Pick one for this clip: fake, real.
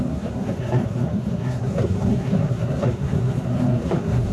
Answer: fake